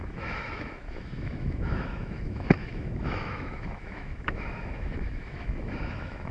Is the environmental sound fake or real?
fake